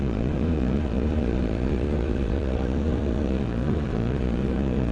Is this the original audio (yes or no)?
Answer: no